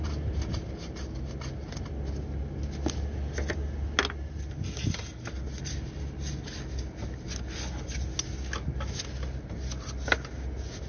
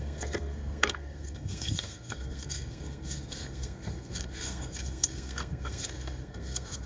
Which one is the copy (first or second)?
second